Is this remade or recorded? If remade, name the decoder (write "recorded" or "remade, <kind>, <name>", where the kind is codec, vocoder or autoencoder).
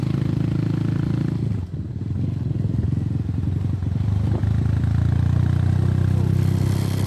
recorded